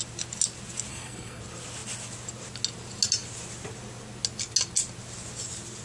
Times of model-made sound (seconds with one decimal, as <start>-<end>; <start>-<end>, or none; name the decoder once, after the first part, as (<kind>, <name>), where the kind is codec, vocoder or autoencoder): 0.9-1.4 (codec, SNAC)